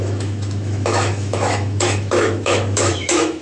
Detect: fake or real fake